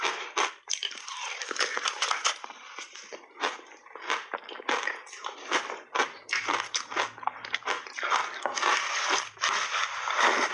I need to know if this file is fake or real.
real